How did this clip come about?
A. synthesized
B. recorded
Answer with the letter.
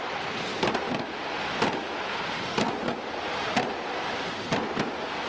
B